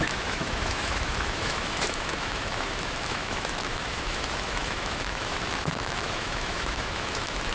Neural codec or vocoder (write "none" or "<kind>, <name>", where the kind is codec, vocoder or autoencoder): autoencoder, DAC-VAE